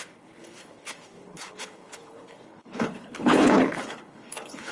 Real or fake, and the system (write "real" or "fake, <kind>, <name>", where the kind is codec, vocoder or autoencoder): fake, codec, HILCodec